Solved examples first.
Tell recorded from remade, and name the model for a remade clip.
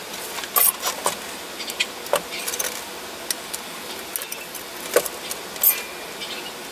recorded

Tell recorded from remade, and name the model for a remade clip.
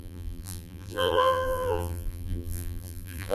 remade, vocoder, BigVGAN v2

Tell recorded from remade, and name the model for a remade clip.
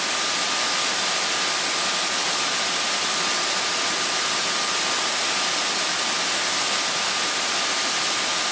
recorded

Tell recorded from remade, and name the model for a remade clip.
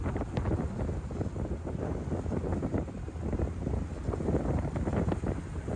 recorded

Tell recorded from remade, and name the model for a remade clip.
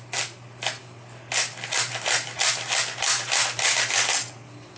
recorded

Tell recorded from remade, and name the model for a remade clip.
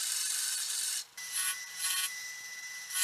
remade, vocoder, BigVGAN v2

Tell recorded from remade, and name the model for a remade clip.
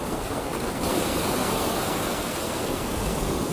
remade, codec, SNAC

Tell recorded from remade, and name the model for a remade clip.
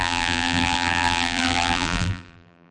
remade, vocoder, BigVGAN v2